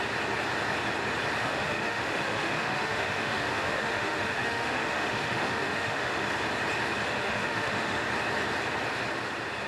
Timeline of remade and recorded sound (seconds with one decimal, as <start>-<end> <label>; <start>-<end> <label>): 0.0-1.4 recorded; 1.4-6.2 remade; 6.2-7.2 recorded; 7.2-8.0 remade; 8.0-9.7 recorded